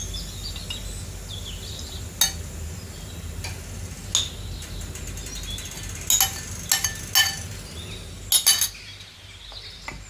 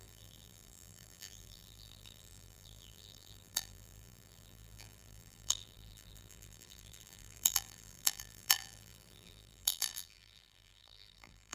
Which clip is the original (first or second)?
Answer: first